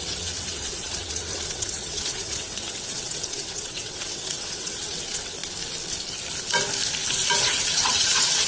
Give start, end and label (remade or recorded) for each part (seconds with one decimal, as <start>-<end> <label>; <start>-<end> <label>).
0.0-5.4 remade; 5.4-7.4 recorded; 7.4-8.5 remade